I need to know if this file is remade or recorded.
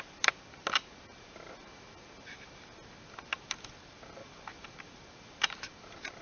recorded